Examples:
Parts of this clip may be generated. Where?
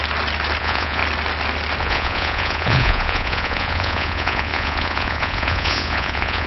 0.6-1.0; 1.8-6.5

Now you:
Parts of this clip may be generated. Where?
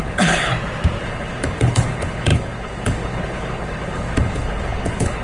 0.0-0.5; 1.0-5.2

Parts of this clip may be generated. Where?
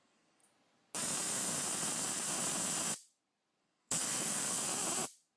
0.0-0.4; 3.6-4.7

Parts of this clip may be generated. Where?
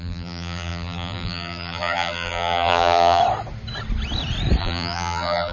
0.0-3.2; 4.6-5.5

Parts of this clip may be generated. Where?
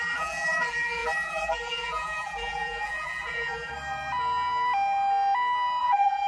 0.0-3.7; 5.8-6.3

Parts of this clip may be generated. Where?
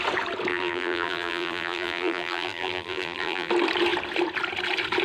0.5-3.5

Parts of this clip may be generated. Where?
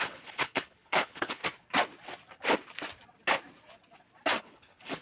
0.0-1.4; 4.4-5.0